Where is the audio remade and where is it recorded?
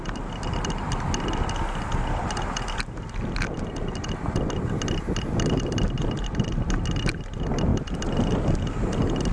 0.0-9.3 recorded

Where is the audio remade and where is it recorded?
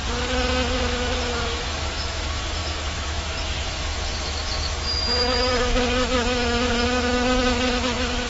0.0-0.8 recorded; 0.8-8.3 remade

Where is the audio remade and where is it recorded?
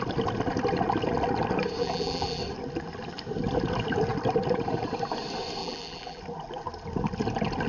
0.0-1.8 recorded; 1.8-2.4 remade; 2.4-5.6 recorded; 5.6-6.2 remade; 6.2-7.7 recorded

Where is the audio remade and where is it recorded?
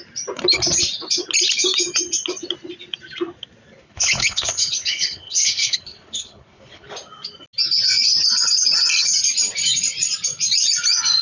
0.0-3.8 recorded; 3.8-6.9 remade; 6.9-11.2 recorded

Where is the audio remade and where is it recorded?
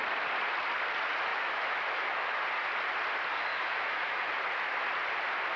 0.0-1.3 recorded; 1.3-2.4 remade; 2.4-3.5 recorded; 3.5-4.2 remade; 4.2-5.6 recorded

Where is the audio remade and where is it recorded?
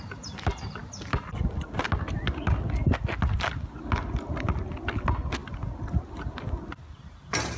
0.0-7.6 recorded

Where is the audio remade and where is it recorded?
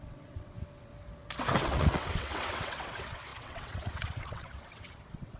0.0-0.9 remade; 0.9-1.5 recorded; 1.5-5.4 remade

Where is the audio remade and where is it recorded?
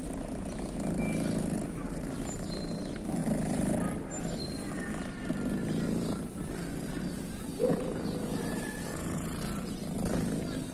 0.0-7.7 recorded; 7.7-9.4 remade; 9.4-10.7 recorded